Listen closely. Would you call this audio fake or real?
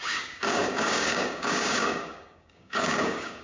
fake